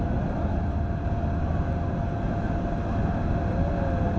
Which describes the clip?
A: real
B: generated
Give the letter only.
A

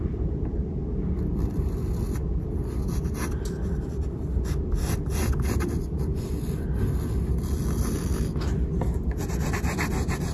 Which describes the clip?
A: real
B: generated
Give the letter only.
A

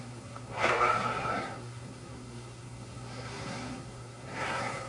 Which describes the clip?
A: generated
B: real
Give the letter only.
A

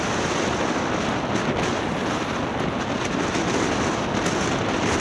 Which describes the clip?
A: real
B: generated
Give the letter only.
A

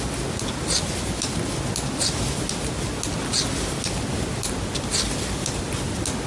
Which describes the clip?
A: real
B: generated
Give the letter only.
A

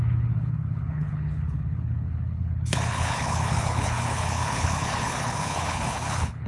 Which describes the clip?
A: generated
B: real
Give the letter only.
A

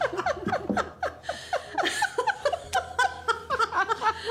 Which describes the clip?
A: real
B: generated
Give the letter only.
A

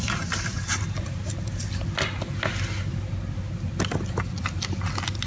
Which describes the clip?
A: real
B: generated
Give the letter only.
A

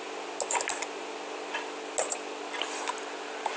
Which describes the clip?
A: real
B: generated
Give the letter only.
A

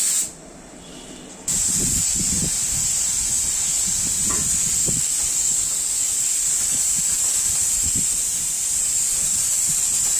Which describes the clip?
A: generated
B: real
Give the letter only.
B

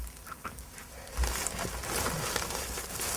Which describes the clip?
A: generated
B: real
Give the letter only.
B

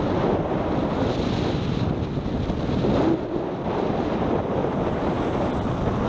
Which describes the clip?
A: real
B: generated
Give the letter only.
A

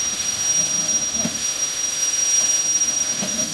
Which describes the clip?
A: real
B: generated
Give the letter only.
B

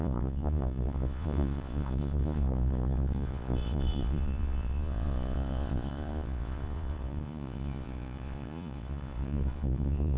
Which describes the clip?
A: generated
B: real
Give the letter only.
A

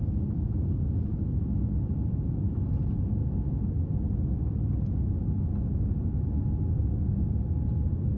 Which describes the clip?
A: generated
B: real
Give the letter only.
B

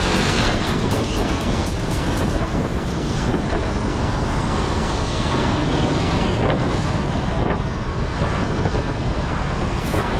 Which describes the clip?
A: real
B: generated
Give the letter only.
B